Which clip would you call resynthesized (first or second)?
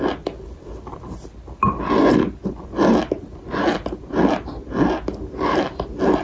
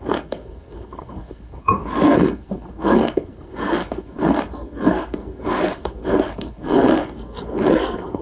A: second